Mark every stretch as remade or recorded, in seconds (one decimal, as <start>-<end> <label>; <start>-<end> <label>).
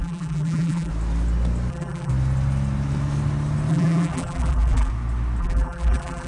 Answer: 0.0-0.9 remade; 0.9-1.7 recorded; 1.7-2.1 remade; 2.1-3.7 recorded; 3.7-4.9 remade; 4.9-5.4 recorded; 5.4-6.3 remade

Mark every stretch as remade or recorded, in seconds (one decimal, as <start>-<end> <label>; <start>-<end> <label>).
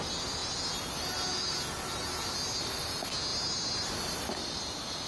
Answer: 0.0-3.3 recorded; 3.3-4.3 remade; 4.3-5.1 recorded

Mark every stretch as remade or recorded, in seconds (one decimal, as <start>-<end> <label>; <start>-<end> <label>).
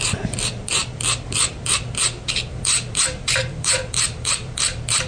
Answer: 0.0-5.1 remade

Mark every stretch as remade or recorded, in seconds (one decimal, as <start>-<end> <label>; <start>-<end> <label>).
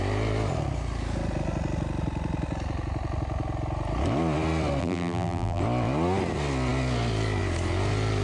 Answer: 0.0-4.8 recorded; 4.8-5.6 remade; 5.6-8.2 recorded